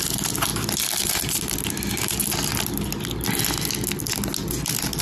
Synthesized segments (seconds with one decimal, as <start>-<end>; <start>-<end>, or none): none